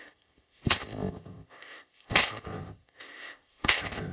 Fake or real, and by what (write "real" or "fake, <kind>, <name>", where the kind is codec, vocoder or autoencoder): fake, codec, ZipCodec